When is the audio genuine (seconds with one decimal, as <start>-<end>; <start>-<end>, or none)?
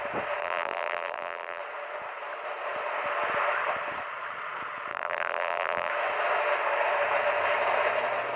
0.0-0.4; 1.6-4.9; 5.9-8.4